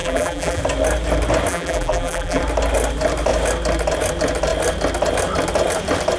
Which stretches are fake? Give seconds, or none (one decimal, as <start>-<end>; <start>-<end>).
0.0-0.6; 1.5-2.4